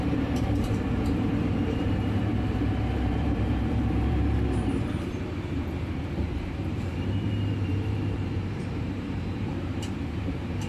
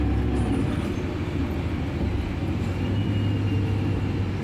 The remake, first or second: first